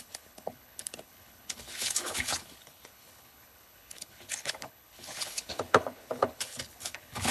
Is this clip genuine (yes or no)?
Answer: no